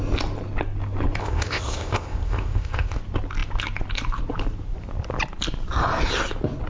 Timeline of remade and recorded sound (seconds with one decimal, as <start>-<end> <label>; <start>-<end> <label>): 0.0-1.2 recorded; 1.2-3.0 remade; 3.0-6.7 recorded